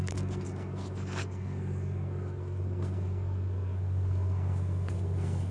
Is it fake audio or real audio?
fake